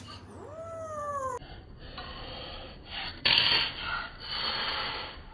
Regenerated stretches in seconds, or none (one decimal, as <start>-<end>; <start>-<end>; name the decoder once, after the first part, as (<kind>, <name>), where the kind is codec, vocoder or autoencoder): none